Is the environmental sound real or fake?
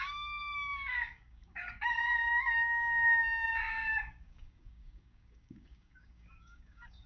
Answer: fake